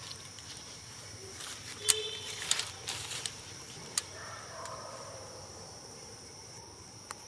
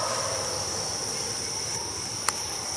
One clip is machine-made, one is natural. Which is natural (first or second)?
second